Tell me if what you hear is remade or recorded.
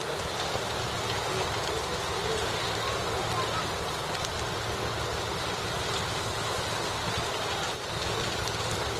recorded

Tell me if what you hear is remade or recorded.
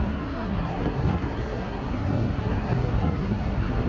remade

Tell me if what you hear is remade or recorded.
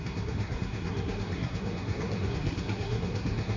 remade